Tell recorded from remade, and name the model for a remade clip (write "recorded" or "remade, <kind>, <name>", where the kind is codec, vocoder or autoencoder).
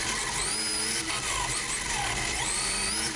recorded